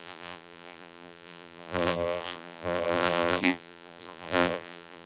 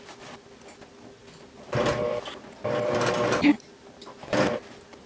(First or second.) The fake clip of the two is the first